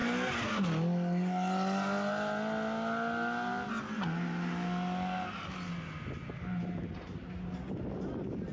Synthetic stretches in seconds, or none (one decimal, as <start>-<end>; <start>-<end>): none